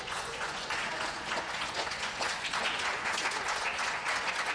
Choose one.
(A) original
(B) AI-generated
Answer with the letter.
B